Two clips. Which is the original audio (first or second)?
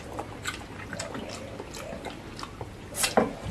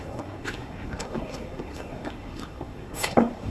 first